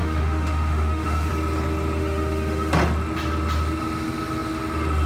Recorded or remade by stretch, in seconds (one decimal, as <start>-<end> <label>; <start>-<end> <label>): 0.0-1.3 remade; 1.3-2.0 recorded; 2.0-2.8 remade; 2.8-5.1 recorded